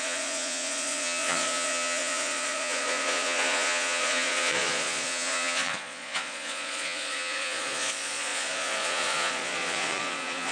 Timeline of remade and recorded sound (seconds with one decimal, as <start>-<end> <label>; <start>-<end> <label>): 0.0-10.5 remade